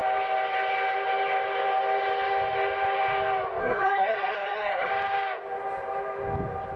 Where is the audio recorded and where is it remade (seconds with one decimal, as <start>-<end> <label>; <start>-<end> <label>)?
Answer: 0.0-3.6 recorded; 3.6-4.9 remade; 4.9-6.8 recorded